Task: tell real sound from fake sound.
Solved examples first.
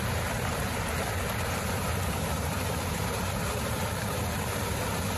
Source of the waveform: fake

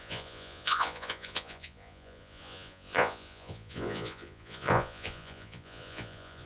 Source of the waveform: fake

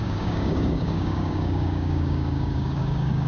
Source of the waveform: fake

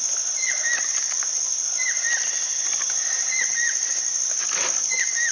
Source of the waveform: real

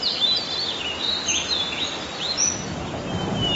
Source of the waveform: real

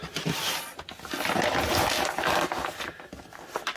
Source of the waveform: real